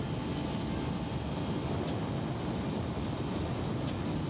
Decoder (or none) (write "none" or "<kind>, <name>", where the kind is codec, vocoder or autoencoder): none